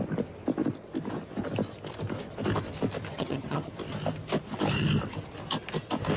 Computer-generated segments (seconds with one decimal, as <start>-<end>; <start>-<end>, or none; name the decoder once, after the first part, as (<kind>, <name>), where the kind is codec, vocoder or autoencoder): 3.1-3.7 (vocoder, HiFi-GAN)